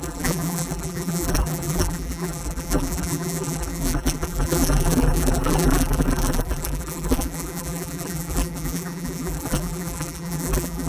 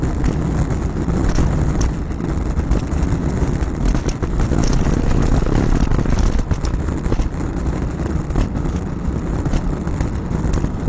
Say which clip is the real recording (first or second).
second